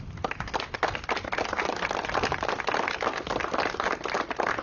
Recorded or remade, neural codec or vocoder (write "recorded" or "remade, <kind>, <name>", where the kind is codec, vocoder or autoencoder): recorded